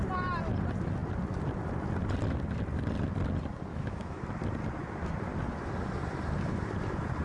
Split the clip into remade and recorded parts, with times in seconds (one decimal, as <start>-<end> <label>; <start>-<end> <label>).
0.0-3.7 recorded; 3.7-4.2 remade; 4.2-7.2 recorded